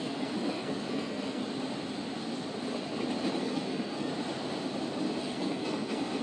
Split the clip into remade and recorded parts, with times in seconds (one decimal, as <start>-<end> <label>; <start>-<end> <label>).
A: 0.0-1.4 remade; 1.4-3.4 recorded; 3.4-4.1 remade; 4.1-5.2 recorded; 5.2-6.2 remade